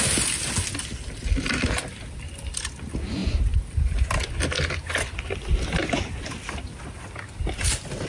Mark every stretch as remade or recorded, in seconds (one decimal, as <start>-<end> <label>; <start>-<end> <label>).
0.0-8.1 recorded